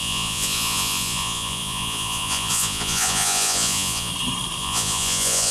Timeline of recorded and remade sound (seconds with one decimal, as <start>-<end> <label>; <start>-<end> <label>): 0.0-4.1 remade; 4.1-4.6 recorded; 4.6-5.5 remade